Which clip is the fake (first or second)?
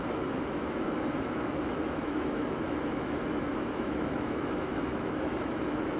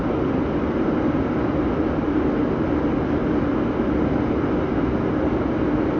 first